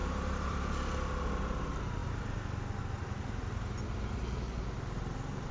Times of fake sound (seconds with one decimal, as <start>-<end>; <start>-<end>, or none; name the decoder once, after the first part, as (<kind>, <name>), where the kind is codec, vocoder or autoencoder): 0.0-0.7 (vocoder, BigVGAN v2)